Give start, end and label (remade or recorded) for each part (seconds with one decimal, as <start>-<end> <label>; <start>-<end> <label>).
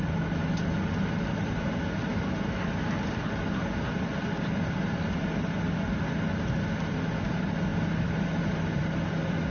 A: 0.0-9.5 recorded